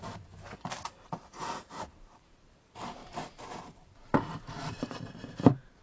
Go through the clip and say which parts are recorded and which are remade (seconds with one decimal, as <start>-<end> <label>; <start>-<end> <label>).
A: 0.0-3.0 remade; 3.0-3.6 recorded; 3.6-5.8 remade